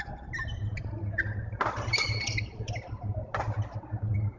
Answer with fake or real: real